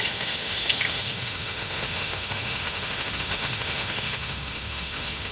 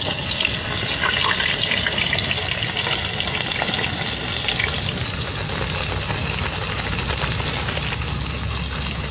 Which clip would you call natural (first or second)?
second